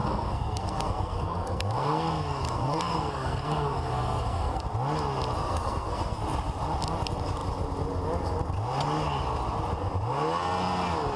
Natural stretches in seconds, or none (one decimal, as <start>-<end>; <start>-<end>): 4.6-5.4; 6.2-11.2